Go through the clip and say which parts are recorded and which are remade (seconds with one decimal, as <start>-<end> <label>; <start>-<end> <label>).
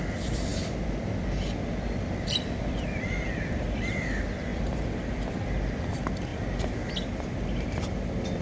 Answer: 0.0-6.3 remade; 6.3-8.4 recorded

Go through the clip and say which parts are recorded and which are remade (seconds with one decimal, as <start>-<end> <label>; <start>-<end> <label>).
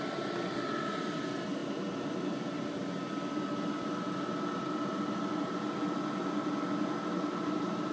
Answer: 0.0-7.9 recorded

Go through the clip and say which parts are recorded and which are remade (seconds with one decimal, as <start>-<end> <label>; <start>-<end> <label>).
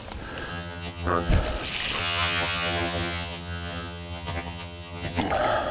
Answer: 0.0-0.5 recorded; 0.5-1.3 remade; 1.3-2.0 recorded; 2.0-5.2 remade; 5.2-5.7 recorded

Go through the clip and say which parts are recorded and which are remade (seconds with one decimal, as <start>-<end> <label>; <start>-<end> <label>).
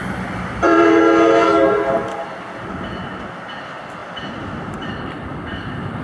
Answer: 0.0-1.0 remade; 1.0-2.0 recorded; 2.0-2.7 remade; 2.7-4.0 recorded; 4.0-6.0 remade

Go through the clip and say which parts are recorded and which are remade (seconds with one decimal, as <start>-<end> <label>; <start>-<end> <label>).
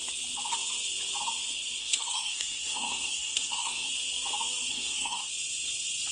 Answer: 0.0-1.8 recorded; 1.8-3.9 remade; 3.9-4.7 recorded; 4.7-5.3 remade; 5.3-6.1 recorded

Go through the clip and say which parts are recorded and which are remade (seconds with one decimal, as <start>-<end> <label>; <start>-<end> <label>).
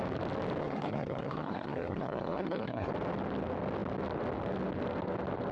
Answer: 0.0-0.6 recorded; 0.6-2.9 remade; 2.9-5.5 recorded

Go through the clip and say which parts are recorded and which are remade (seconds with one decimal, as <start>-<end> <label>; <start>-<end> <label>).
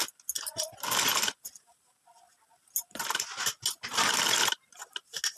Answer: 0.0-5.4 recorded